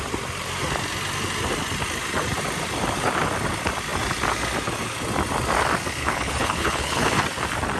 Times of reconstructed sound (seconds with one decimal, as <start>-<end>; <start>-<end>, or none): 6.0-7.1